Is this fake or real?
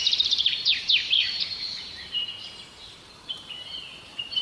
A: fake